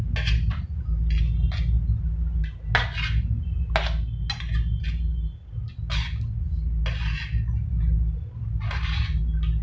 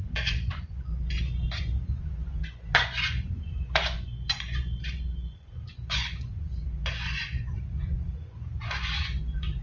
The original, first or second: first